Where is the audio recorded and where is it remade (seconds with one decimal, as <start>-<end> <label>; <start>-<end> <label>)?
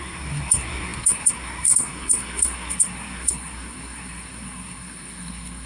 0.0-5.7 remade